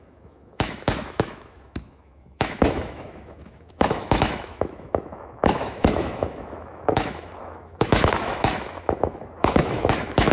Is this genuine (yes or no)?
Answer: no